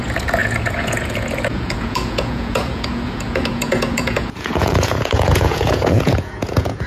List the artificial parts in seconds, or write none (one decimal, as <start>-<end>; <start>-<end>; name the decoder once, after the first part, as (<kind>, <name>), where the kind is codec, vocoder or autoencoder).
0.0-6.9 (vocoder, Vocos)